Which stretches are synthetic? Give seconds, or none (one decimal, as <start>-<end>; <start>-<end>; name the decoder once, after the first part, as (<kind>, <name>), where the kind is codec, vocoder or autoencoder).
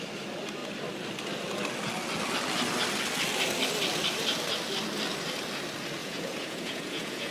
6.0-7.3 (vocoder, Vocos)